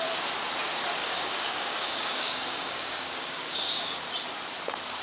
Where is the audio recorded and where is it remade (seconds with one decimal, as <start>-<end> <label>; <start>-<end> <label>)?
0.0-1.0 recorded; 1.0-4.0 remade; 4.0-5.0 recorded